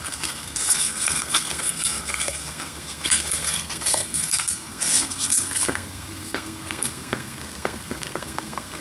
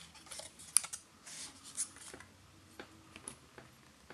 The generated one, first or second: first